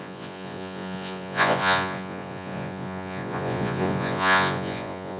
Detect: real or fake fake